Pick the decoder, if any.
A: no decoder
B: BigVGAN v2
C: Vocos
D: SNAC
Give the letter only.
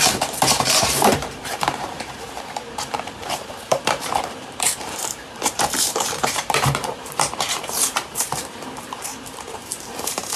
B